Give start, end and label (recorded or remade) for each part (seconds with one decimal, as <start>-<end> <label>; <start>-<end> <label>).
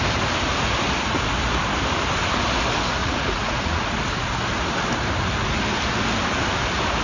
0.0-3.0 recorded; 3.0-3.8 remade; 3.8-7.0 recorded